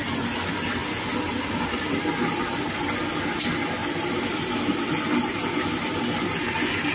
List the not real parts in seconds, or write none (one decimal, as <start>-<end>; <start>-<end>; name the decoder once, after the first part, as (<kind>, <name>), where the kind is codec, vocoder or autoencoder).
0.8-2.4 (vocoder, BigVGAN v2); 3.8-6.0